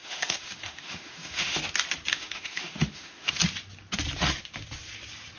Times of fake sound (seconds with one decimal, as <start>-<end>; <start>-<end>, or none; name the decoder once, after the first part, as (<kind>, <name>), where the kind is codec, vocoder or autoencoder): 0.0-1.7 (autoencoder, DAC-VAE); 2.1-3.4